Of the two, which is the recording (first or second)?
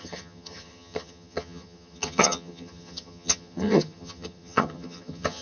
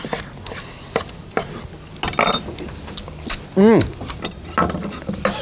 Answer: second